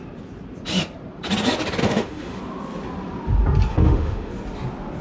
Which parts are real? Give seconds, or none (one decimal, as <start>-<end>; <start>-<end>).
0.0-1.8; 2.4-3.7; 4.3-5.0